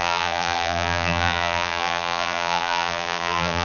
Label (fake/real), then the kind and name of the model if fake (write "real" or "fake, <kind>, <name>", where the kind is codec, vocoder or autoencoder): fake, vocoder, BigVGAN v2